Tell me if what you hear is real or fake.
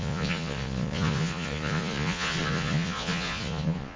fake